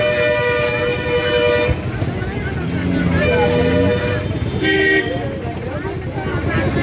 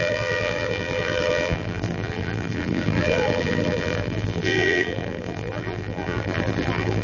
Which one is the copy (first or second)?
second